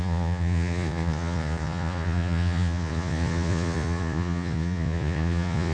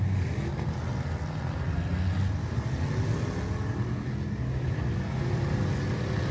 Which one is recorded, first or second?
second